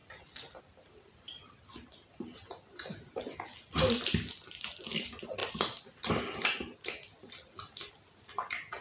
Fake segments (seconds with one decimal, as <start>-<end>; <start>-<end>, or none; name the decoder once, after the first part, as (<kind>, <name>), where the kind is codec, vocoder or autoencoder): none

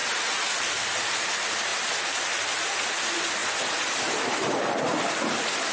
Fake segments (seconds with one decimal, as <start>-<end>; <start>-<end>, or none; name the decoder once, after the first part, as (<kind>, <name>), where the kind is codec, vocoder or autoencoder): 0.6-5.7 (vocoder, BigVGAN v2)

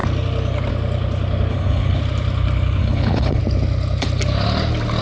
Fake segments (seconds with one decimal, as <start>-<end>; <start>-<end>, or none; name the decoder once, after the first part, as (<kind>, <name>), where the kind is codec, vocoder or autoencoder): 1.5-2.0 (codec, HILCodec); 2.8-3.4

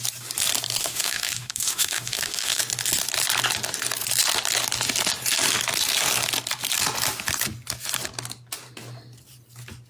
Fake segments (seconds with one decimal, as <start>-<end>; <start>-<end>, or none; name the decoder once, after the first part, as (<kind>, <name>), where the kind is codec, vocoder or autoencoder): 0.8-2.6 (autoencoder, DAC-VAE)

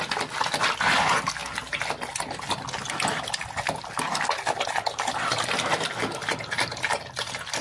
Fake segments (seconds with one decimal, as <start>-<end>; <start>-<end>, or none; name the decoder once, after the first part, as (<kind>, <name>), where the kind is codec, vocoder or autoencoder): none

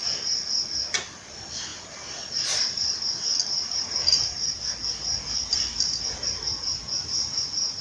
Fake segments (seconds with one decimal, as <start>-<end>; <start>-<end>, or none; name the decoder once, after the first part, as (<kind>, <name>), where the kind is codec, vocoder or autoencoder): none

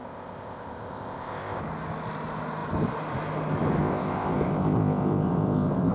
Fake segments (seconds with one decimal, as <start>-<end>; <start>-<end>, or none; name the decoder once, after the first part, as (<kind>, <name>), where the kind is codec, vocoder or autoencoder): 0.0-1.6 (codec, ZipCodec); 3.8-5.9

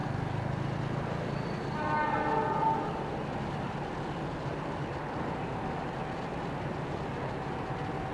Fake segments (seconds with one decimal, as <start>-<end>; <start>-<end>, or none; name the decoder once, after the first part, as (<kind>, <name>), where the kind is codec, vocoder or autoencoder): none